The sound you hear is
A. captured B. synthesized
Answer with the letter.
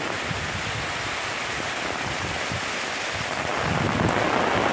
A